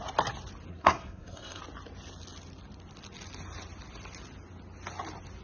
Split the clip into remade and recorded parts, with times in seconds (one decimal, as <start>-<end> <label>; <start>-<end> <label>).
0.0-0.7 recorded; 0.7-1.6 remade; 1.6-5.4 recorded